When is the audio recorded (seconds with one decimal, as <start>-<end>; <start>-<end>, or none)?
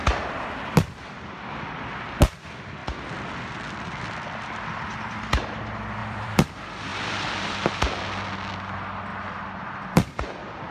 0.0-2.8; 5.2-6.0; 6.5-6.9; 7.8-9.1